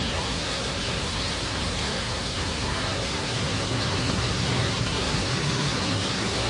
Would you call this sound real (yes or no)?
no